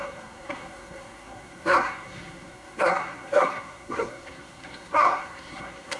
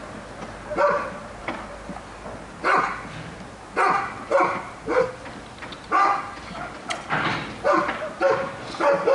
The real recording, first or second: second